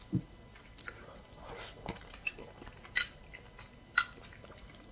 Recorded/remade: recorded